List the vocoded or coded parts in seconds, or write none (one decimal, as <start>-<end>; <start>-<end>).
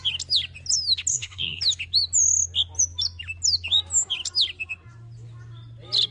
1.1-1.6